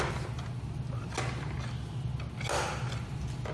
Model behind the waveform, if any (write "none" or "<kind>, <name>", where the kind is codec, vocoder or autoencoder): none